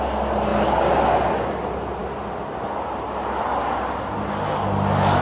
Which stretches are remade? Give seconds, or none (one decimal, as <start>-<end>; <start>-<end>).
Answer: none